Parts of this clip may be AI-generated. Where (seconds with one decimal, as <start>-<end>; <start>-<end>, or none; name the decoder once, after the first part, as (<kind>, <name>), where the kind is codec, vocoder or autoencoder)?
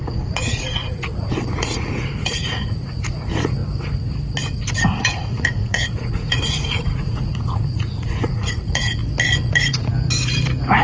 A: 0.0-3.6 (vocoder, Vocos); 5.0-9.0; 9.5-9.9